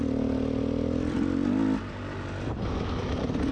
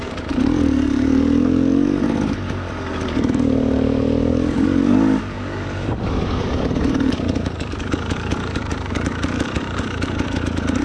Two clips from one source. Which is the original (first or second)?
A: first